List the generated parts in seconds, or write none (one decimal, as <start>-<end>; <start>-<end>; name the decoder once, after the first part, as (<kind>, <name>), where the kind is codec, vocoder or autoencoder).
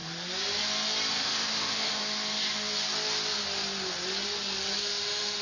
1.1-2.0 (autoencoder, DAC-VAE); 4.8-5.4